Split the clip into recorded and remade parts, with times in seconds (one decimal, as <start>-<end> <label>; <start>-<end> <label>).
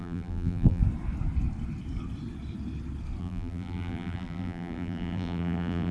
0.0-0.8 remade; 0.8-3.2 recorded; 3.2-5.9 remade